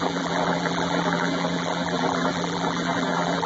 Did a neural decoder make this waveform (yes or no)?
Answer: yes